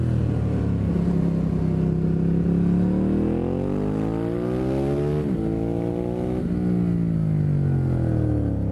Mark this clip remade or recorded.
recorded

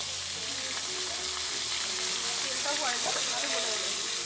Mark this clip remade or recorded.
recorded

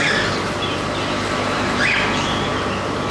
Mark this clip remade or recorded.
recorded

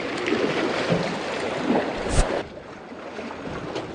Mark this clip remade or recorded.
recorded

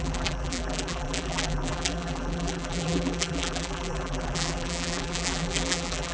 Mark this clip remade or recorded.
remade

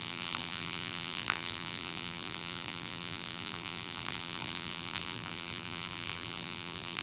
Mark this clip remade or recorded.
remade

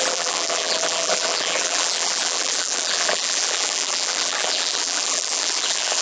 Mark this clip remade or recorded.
remade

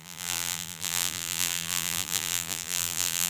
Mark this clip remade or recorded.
remade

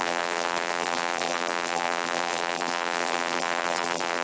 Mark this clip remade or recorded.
remade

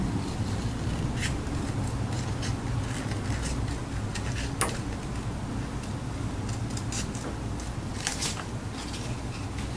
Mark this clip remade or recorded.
recorded